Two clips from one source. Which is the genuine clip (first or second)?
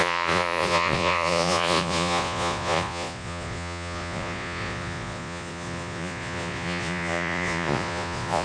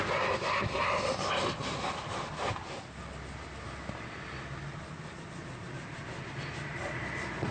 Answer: second